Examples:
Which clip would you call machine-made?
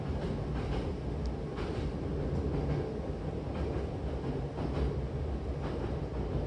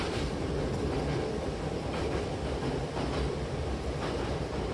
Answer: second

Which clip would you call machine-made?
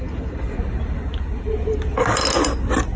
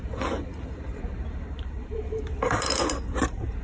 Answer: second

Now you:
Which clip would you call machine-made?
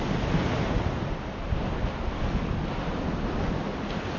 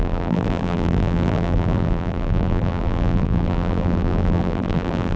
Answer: second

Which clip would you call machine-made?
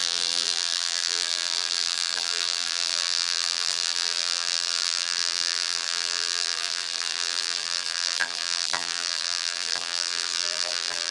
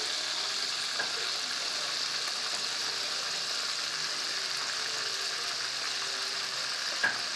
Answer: first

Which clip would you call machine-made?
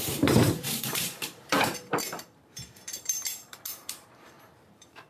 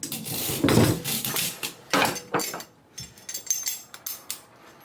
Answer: first